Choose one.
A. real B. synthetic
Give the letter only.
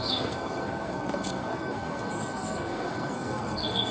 B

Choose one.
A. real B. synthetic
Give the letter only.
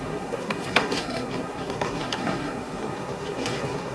B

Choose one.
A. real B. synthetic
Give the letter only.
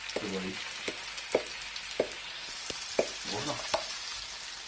A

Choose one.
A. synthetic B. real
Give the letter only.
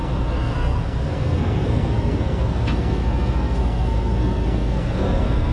A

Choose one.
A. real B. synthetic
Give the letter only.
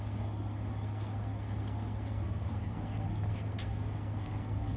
B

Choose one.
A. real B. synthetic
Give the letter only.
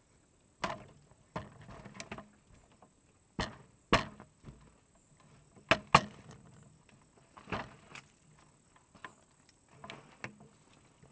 A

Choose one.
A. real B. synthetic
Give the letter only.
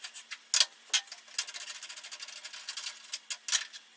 A